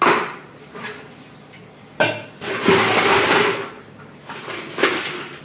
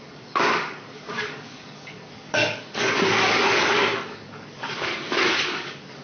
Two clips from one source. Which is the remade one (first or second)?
second